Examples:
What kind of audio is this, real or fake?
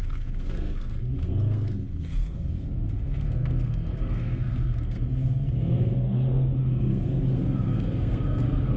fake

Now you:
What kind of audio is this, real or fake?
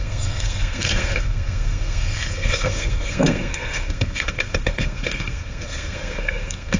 fake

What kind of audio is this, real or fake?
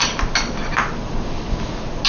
real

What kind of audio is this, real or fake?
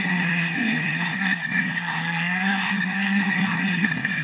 fake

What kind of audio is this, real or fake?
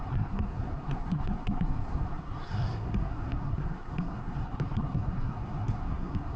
fake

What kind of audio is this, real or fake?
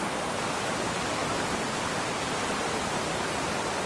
real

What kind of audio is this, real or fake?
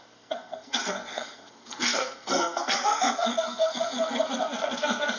fake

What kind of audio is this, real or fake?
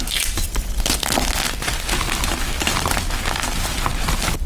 real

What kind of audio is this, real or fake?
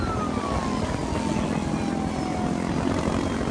real